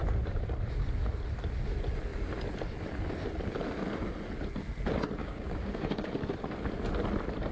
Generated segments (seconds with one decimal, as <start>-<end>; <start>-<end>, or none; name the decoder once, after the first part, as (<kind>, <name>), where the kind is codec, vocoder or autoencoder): 5.2-6.1 (codec, DAC)